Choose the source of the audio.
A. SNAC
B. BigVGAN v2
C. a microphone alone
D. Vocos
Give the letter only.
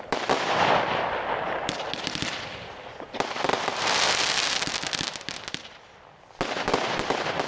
B